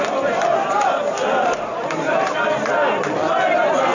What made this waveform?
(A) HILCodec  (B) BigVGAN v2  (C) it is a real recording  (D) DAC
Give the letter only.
B